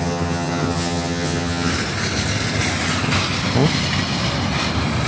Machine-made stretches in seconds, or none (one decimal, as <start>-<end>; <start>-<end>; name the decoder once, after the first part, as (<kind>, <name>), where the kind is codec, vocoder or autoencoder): 0.0-1.7 (vocoder, HiFi-GAN)